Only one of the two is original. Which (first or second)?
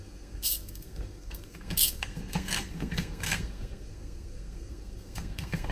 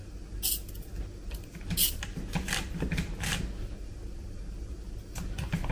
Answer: second